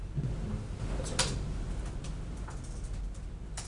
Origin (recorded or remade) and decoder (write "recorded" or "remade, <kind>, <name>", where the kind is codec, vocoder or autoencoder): recorded